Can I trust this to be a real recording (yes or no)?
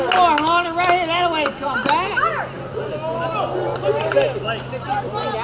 yes